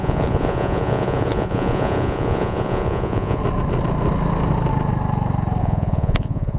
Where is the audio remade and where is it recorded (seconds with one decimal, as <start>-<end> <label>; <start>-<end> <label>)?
0.0-3.4 remade; 3.4-5.6 recorded; 5.6-6.6 remade